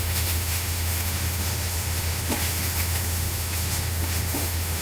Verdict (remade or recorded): remade